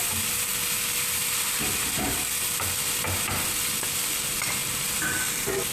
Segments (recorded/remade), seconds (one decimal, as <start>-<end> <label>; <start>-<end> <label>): 0.0-4.6 recorded; 4.6-5.2 remade; 5.2-5.7 recorded